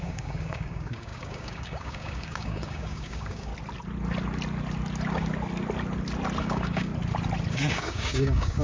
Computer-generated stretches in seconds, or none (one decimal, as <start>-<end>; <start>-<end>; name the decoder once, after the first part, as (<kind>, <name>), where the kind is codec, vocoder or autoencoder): 0.0-3.5 (codec, DAC); 6.4-6.9; 7.5-8.6